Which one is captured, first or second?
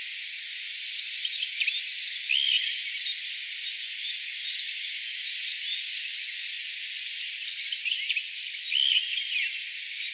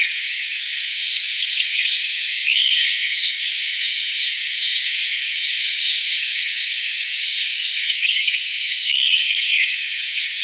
first